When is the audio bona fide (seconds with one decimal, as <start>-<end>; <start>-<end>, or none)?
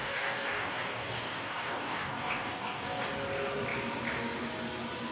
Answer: 3.1-5.1